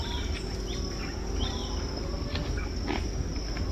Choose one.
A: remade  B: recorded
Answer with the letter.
B